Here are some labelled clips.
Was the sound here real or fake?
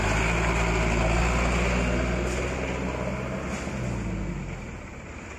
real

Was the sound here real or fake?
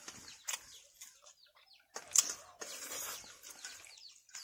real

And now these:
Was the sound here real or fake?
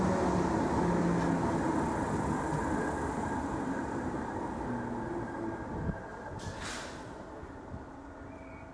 real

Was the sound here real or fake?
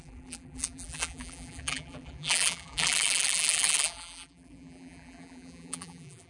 fake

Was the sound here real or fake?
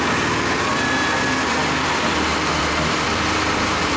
fake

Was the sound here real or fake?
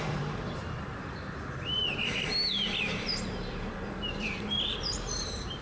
fake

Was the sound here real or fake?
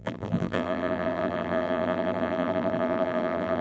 fake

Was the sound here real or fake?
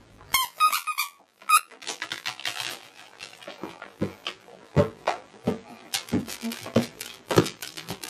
fake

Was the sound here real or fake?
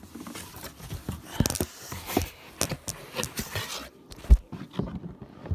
real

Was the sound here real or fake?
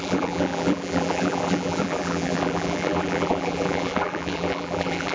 fake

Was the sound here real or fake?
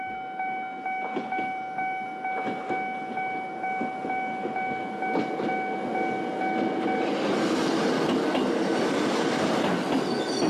real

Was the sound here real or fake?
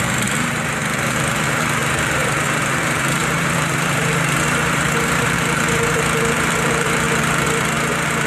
fake